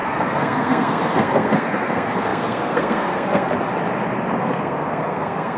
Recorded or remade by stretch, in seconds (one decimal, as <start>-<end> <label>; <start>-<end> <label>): 0.0-3.5 remade; 3.5-4.4 recorded; 4.4-5.6 remade